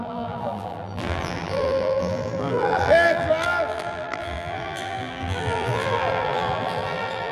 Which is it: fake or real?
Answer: fake